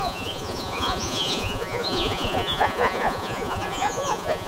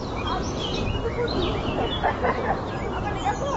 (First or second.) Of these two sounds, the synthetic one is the first